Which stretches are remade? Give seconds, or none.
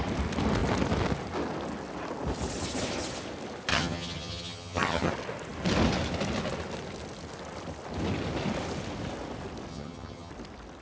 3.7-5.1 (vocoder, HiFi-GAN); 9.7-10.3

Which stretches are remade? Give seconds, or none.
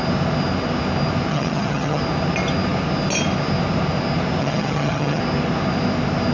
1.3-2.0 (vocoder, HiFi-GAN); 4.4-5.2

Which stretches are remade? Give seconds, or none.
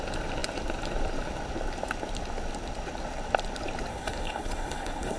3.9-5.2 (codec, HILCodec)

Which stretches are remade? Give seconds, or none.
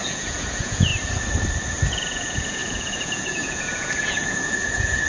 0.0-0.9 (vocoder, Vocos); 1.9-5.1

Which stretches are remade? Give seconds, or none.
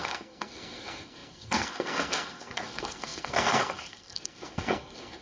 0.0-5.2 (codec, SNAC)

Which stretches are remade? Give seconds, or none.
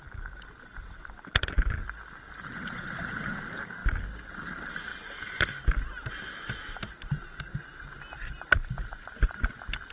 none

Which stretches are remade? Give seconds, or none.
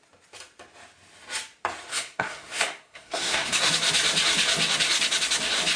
1.9-3.7 (codec, SNAC)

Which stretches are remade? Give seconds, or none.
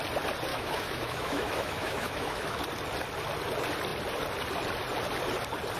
0.5-2.6 (autoencoder, DAC-VAE)